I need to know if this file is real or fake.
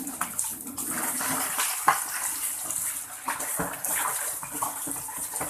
real